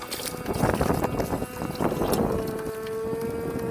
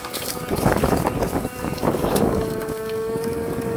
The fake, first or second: second